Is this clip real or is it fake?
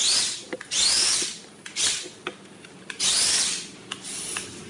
real